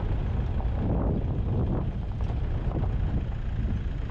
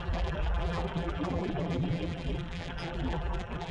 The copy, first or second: second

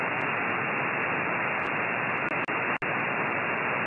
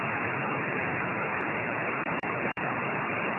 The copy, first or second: second